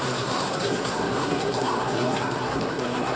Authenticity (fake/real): fake